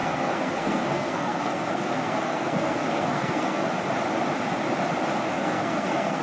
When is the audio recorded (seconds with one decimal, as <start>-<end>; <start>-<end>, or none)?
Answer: 3.7-5.4